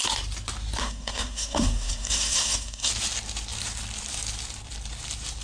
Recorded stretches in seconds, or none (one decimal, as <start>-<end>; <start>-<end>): 0.0-0.8; 2.9-5.4